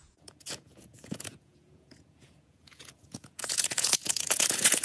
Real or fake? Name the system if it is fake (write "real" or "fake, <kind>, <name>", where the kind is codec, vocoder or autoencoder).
fake, vocoder, Vocos